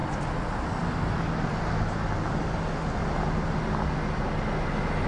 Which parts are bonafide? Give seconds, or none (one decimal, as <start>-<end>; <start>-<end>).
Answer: 0.0-5.1